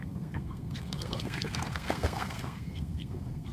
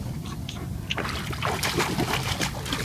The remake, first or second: first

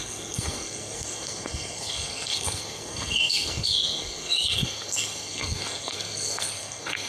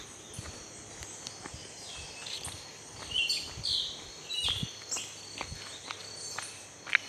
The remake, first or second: first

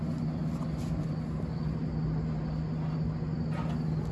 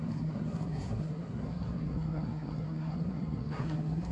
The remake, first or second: second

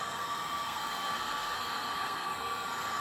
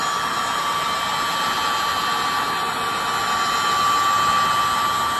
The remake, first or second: first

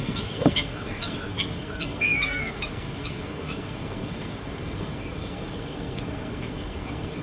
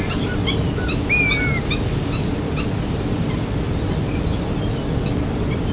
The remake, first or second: first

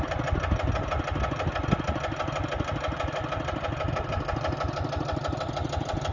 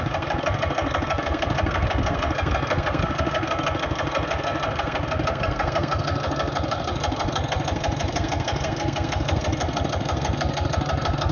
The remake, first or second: second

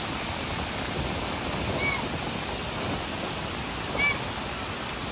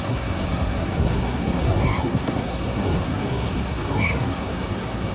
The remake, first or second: second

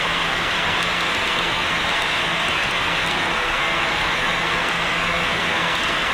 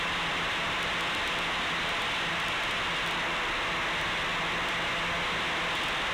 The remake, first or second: first